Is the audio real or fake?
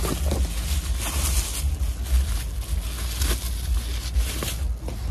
real